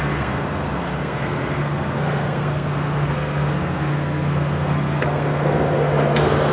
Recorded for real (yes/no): no